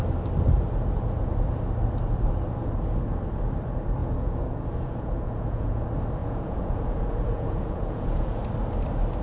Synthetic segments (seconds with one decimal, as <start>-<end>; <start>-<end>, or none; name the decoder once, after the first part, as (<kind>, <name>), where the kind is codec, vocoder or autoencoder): 4.0-5.8 (vocoder, Vocos); 6.2-8.4